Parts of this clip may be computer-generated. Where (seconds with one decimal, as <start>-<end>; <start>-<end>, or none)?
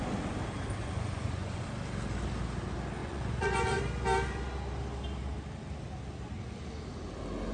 0.8-1.6; 3.0-3.8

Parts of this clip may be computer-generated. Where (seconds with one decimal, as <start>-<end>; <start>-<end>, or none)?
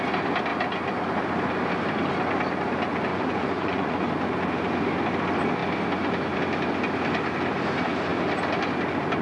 3.1-4.1